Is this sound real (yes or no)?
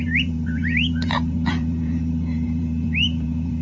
no